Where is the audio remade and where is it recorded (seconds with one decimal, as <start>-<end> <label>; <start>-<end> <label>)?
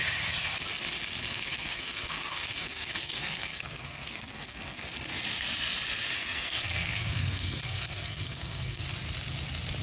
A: 0.0-1.3 recorded; 1.3-4.8 remade; 4.8-6.2 recorded; 6.2-8.8 remade; 8.8-9.8 recorded